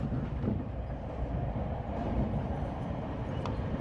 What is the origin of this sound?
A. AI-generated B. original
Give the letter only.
A